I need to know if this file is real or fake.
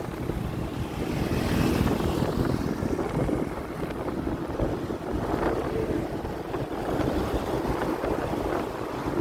real